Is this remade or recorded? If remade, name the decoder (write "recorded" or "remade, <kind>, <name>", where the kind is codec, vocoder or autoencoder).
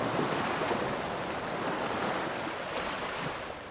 recorded